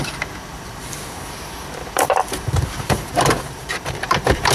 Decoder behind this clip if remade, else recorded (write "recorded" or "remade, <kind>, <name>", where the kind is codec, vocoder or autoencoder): remade, vocoder, BigVGAN v2